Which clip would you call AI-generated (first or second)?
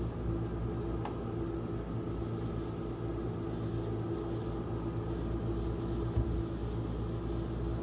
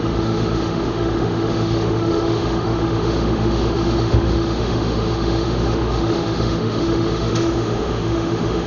second